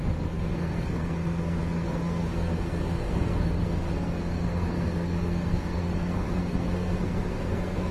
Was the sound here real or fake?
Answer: fake